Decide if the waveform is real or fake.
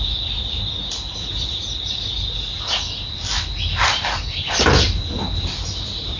real